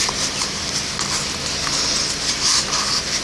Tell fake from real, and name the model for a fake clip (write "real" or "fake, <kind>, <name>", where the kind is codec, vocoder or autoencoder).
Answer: real